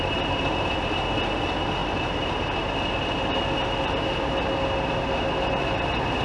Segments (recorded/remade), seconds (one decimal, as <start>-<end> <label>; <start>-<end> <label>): 0.0-6.2 recorded